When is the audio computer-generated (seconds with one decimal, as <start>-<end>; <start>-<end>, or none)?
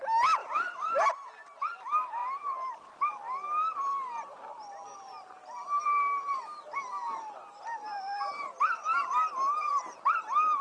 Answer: 0.4-1.1; 2.2-2.9; 5.4-9.4